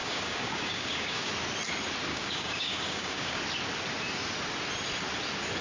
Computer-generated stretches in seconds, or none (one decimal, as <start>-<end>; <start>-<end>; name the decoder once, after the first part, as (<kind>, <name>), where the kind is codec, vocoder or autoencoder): 0.0-1.3 (codec, DAC); 2.1-3.4